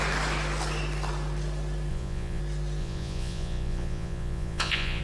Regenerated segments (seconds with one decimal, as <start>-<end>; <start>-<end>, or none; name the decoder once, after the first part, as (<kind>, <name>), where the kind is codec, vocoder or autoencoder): 1.9-2.4 (vocoder, Vocos); 2.8-5.0